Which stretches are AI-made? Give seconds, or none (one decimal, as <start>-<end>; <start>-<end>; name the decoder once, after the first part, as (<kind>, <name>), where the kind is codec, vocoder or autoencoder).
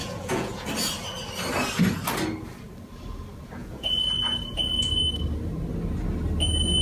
0.0-0.7 (vocoder, Vocos); 3.6-5.0